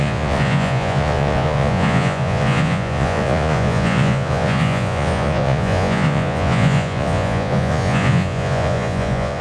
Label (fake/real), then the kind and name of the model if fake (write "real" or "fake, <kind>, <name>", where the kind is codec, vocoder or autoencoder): fake, vocoder, Vocos